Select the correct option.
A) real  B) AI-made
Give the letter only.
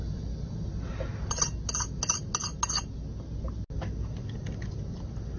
A